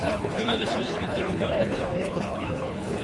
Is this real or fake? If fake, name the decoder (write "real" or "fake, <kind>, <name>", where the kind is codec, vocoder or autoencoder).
fake, codec, HILCodec